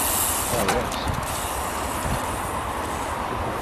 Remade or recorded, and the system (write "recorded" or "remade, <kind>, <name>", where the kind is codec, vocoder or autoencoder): remade, vocoder, BigVGAN v2